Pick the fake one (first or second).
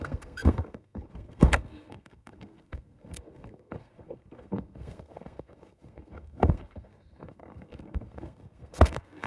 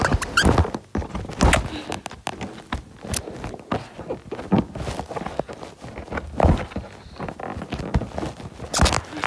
first